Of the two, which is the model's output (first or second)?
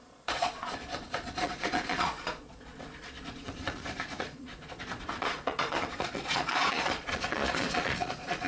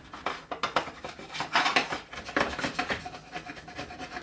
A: first